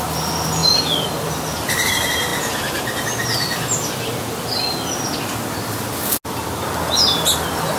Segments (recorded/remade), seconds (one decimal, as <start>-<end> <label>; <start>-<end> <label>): 0.0-7.8 recorded